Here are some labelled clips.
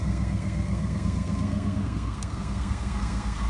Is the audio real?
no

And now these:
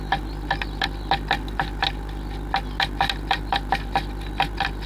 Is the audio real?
yes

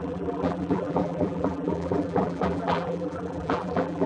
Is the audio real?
no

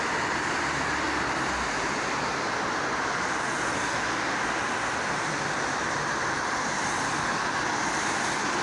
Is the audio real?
yes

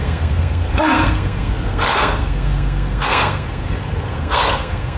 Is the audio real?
no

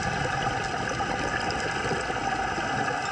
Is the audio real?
yes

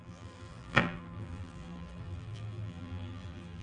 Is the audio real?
no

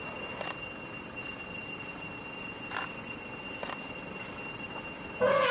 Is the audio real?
yes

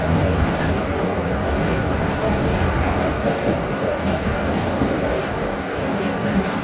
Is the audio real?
no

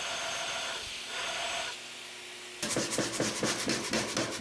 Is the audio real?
yes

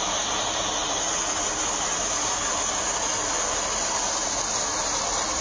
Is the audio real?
yes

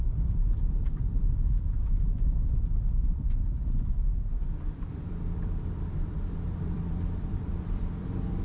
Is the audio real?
no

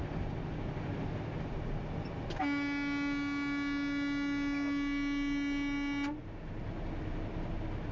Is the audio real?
yes